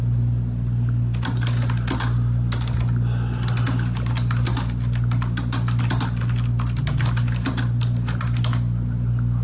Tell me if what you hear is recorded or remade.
recorded